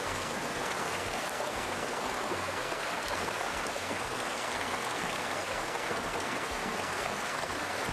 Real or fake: fake